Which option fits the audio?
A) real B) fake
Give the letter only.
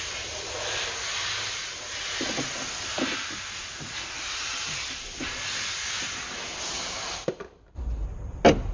A